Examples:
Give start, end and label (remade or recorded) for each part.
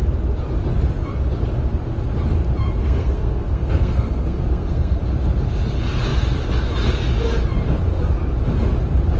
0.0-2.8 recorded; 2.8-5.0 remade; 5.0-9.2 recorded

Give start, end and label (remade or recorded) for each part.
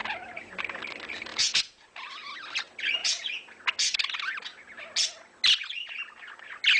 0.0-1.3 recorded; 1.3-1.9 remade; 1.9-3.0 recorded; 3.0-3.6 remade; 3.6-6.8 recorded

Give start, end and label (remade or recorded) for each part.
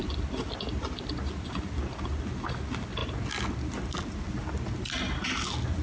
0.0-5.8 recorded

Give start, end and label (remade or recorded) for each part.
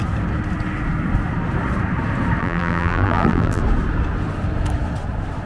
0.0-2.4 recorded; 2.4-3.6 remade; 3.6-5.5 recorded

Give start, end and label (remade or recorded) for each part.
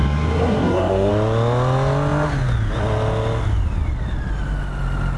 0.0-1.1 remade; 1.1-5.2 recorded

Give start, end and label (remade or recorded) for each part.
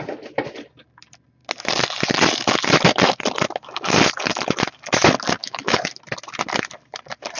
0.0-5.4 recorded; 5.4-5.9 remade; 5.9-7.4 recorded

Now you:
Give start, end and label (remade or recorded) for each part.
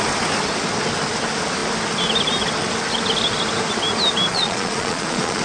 0.0-4.3 recorded; 4.3-5.4 remade